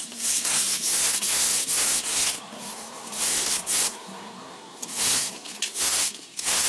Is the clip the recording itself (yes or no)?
no